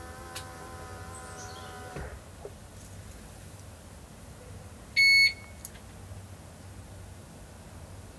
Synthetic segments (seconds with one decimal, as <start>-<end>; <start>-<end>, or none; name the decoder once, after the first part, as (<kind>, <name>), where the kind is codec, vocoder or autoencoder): none